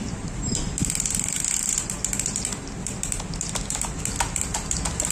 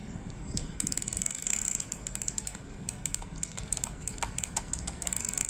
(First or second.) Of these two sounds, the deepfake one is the second